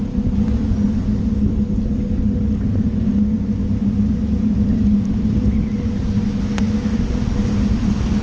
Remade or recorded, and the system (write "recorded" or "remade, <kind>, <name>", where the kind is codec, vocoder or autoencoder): recorded